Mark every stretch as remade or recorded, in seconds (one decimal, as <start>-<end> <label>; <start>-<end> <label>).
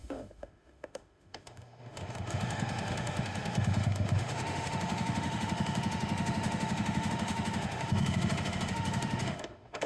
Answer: 0.0-9.9 remade